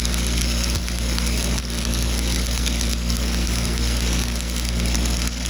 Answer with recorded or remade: remade